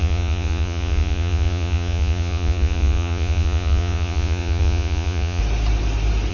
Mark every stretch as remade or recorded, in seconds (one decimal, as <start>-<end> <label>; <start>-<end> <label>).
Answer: 0.0-5.4 remade; 5.4-6.3 recorded